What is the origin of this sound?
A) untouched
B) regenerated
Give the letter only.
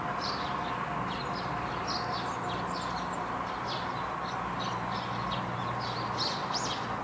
A